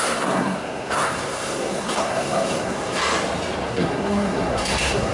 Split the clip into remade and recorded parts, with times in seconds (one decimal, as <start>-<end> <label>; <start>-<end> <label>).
0.0-3.0 remade; 3.0-3.7 recorded; 3.7-5.1 remade